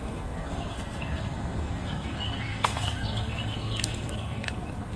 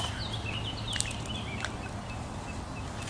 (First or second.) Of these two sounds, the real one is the second